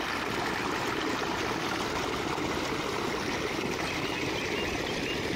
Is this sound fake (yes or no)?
no